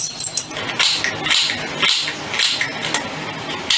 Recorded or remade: recorded